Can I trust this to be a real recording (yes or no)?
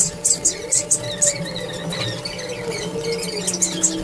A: yes